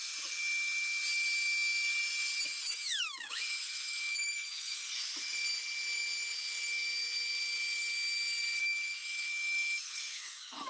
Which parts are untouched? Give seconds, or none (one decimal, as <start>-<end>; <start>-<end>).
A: 0.0-2.6; 4.8-8.6